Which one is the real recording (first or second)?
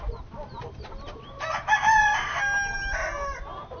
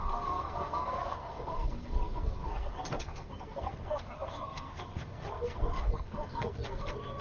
first